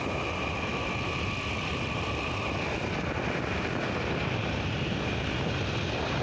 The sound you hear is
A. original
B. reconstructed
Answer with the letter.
A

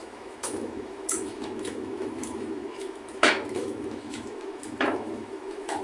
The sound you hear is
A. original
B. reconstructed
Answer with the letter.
B